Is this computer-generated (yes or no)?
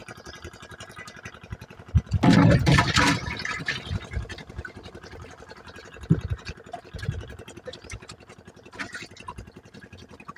no